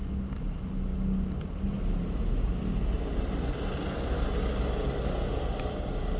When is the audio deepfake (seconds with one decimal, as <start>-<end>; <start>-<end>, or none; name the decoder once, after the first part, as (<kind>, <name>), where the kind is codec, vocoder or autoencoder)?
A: none